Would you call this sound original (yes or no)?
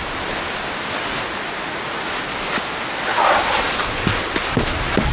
yes